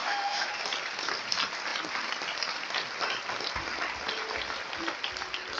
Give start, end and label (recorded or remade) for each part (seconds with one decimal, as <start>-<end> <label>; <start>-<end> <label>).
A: 0.0-0.5 remade; 0.5-5.6 recorded